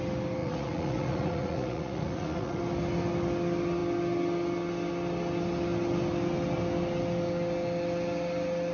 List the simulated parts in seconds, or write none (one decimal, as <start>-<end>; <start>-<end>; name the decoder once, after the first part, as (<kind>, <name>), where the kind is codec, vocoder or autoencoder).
0.4-2.6 (vocoder, Vocos)